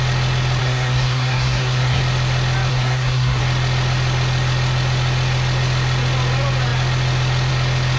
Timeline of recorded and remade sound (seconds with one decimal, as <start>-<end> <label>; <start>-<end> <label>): 0.0-0.6 recorded; 0.6-2.0 remade; 2.0-2.7 recorded; 2.7-3.4 remade; 3.4-8.0 recorded